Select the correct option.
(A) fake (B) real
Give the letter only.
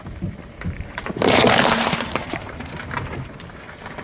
A